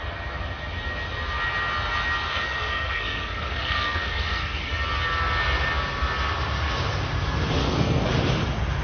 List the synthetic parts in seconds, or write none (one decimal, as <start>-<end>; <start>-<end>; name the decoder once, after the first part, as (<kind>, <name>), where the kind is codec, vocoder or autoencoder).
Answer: 2.3-4.7 (codec, SNAC); 7.6-8.1